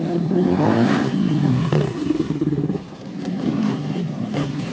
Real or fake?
fake